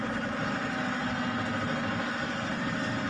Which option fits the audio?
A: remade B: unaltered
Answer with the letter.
B